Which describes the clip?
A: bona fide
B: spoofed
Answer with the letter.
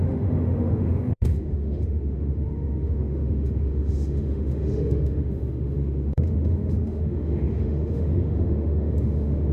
B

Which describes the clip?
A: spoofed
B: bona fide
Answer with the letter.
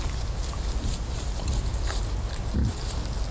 B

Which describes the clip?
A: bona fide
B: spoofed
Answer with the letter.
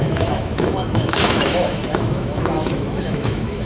B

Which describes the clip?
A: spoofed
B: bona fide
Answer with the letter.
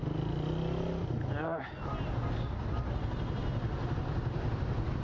B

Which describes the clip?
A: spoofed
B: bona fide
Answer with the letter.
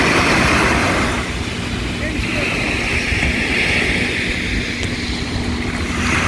B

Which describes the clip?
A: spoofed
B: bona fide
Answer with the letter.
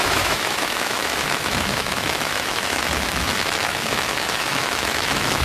A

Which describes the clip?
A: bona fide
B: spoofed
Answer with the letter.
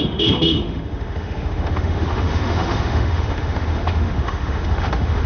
B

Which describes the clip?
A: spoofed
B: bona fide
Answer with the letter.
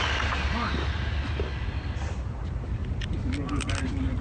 B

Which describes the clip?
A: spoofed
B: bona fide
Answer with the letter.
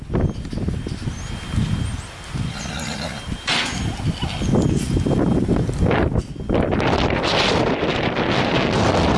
B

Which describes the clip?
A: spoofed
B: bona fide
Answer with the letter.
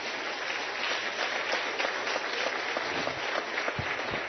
B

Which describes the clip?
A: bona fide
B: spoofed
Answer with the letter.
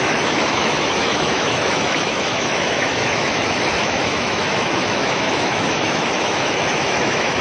B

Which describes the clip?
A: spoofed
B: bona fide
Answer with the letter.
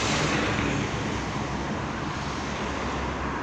B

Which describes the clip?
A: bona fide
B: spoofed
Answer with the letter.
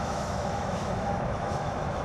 B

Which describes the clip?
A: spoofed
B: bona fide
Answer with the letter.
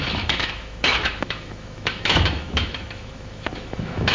A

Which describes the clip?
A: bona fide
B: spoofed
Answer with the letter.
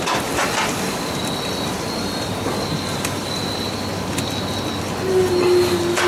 A